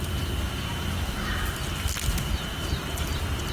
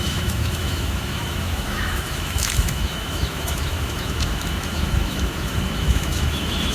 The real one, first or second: first